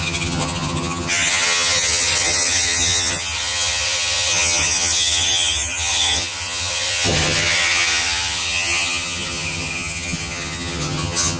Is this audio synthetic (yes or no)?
yes